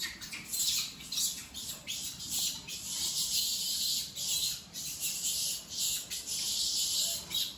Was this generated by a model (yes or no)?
yes